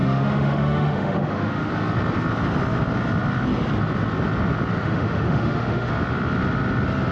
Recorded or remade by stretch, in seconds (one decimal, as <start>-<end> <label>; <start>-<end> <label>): 0.0-1.7 remade; 1.7-4.8 recorded; 4.8-5.9 remade; 5.9-7.1 recorded